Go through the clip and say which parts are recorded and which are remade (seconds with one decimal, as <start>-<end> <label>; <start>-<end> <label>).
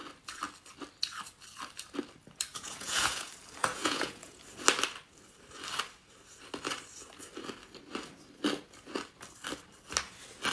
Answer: 0.0-2.5 recorded; 2.5-3.3 remade; 3.3-3.7 recorded; 3.7-4.4 remade; 4.4-10.5 recorded